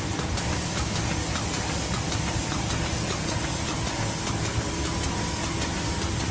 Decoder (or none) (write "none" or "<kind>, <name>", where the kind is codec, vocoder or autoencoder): none